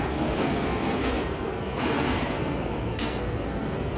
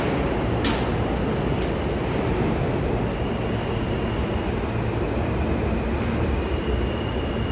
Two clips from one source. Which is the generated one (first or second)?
first